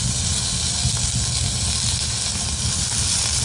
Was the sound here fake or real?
real